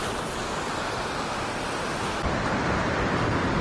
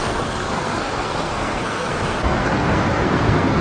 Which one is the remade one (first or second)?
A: second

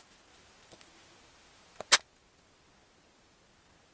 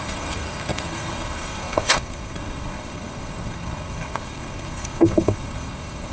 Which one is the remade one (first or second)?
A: second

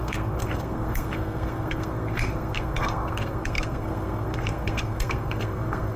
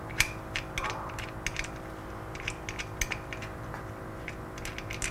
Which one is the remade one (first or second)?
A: first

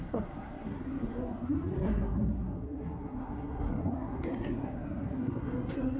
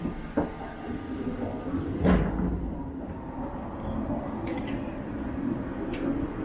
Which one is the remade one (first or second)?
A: first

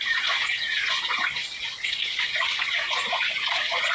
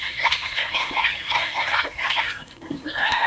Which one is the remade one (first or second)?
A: second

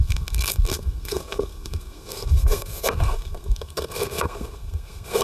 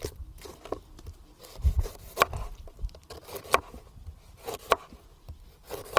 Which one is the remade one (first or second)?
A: first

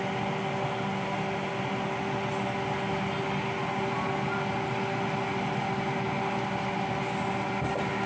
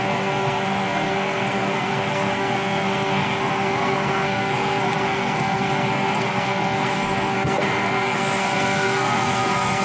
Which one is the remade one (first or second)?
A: second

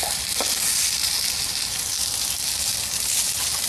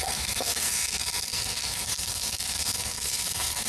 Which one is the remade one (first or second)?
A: second